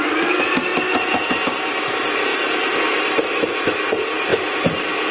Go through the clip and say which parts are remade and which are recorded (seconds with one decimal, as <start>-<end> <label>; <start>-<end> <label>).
0.0-5.1 recorded